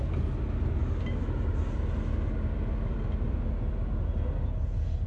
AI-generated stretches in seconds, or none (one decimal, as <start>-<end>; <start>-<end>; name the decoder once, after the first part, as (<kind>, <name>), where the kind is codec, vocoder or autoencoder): none